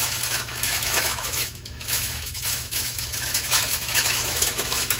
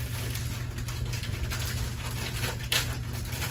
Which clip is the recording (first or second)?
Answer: second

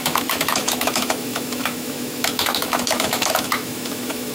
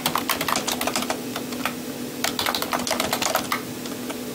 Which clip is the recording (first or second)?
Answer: second